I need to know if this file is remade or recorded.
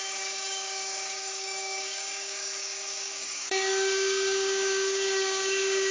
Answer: remade